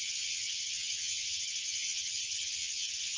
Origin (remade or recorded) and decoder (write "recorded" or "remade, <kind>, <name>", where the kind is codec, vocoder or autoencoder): remade, vocoder, HiFi-GAN